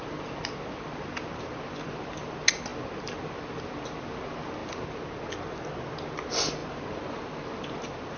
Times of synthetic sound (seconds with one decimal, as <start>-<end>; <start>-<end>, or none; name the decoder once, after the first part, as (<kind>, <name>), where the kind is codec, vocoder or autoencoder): none